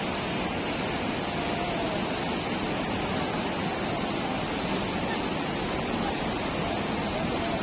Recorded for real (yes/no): yes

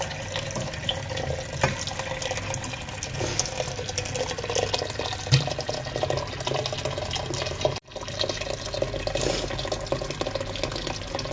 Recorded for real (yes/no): yes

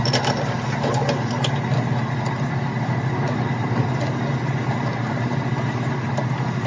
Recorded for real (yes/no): yes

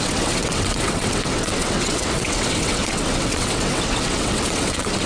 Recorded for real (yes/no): no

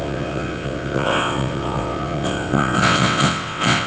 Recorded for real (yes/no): no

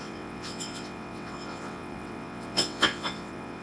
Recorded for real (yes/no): no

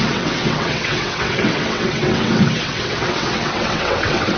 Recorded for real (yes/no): no